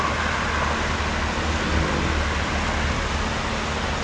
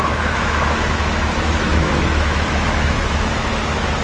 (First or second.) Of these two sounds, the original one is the first